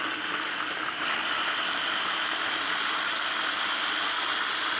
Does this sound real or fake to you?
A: real